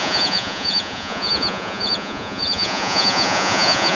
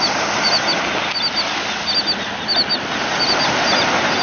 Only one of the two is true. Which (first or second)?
second